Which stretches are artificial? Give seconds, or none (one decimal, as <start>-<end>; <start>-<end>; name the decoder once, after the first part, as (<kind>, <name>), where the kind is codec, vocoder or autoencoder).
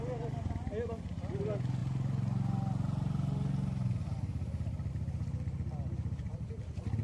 none